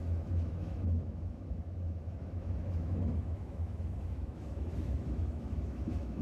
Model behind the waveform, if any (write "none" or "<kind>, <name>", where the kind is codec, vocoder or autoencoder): autoencoder, DAC-VAE